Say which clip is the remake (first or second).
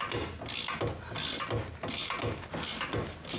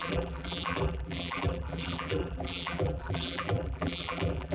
second